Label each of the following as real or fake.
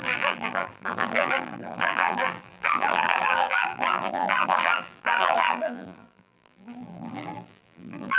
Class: fake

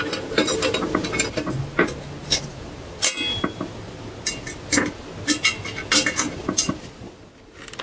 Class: real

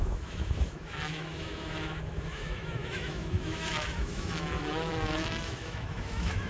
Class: fake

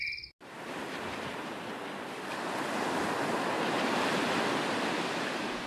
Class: real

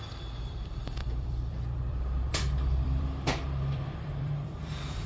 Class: fake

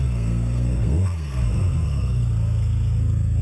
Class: fake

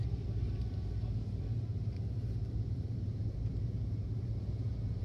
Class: fake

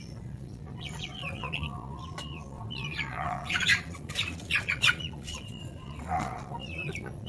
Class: fake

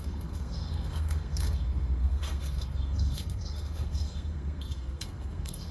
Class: fake